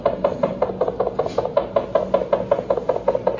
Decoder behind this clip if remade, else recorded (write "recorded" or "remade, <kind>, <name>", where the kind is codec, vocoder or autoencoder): recorded